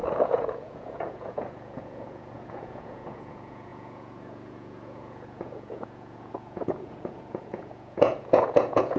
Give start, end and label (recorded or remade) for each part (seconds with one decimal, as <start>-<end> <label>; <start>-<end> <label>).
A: 0.0-9.0 remade